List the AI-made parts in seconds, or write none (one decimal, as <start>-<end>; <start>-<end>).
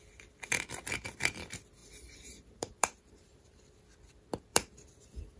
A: 1.8-3.6; 4.5-5.4